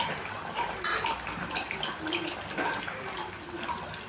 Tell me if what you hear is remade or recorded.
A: recorded